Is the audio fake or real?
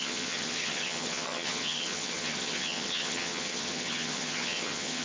fake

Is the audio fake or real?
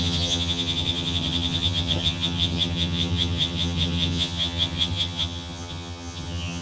fake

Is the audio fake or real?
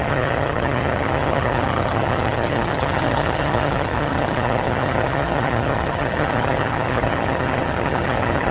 fake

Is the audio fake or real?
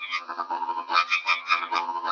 fake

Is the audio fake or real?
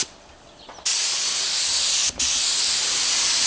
real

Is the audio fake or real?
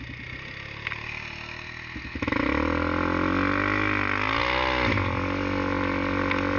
real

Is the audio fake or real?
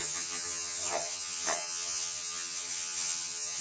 fake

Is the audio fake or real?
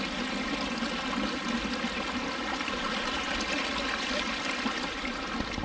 real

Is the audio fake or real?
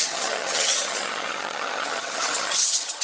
fake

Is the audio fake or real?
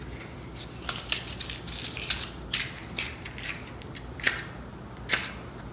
real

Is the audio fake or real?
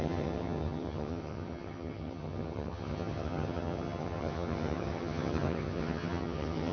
fake